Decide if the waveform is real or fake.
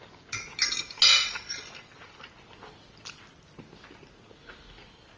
real